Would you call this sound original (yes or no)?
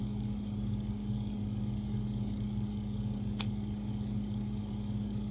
no